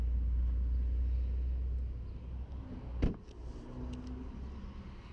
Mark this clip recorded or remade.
recorded